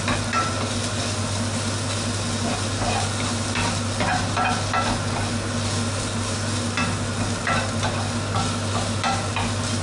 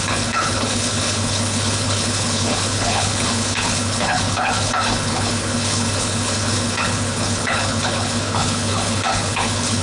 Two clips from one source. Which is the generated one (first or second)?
second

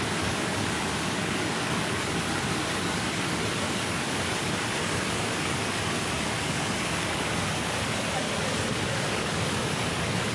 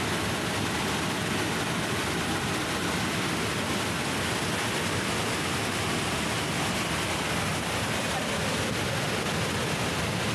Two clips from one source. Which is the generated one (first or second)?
first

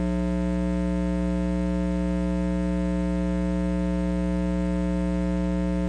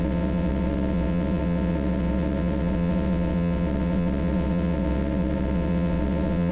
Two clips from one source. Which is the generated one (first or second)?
second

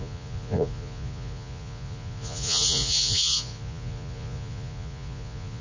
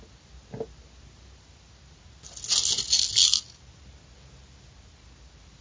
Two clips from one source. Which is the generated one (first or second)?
first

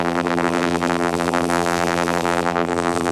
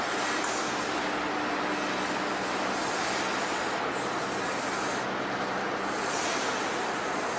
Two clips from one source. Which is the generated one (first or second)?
first